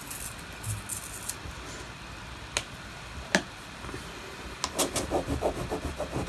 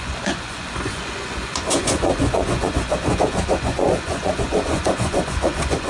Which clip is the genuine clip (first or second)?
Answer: first